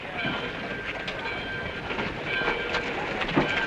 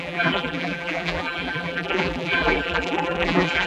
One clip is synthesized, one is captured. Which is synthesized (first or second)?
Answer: second